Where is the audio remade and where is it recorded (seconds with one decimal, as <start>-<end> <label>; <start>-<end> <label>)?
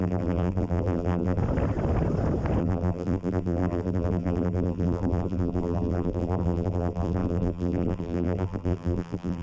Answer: 0.0-1.4 remade; 1.4-2.6 recorded; 2.6-9.4 remade